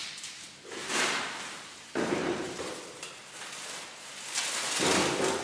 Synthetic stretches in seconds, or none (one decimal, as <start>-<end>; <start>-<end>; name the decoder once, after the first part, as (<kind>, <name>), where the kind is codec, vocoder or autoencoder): 0.0-3.2 (vocoder, BigVGAN v2)